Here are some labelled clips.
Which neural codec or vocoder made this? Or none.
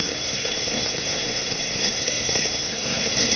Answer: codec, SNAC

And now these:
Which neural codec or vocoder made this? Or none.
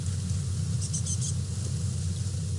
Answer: none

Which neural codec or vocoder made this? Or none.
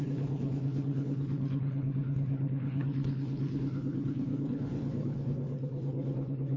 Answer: codec, HILCodec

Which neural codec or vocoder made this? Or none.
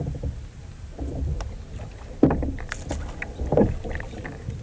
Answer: none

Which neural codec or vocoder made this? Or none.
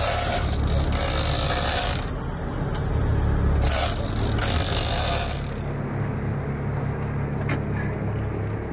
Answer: none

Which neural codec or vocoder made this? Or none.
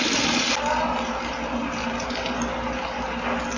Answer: none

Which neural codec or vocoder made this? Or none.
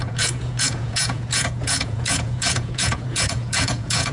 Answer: vocoder, Vocos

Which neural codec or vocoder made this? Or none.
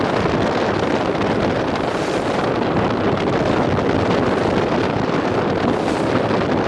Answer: none